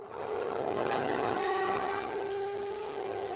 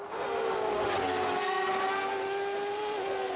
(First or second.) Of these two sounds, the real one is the second